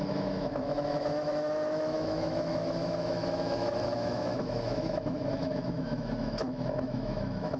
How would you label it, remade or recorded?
remade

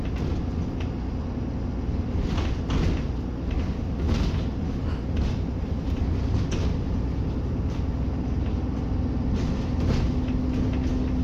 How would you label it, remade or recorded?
recorded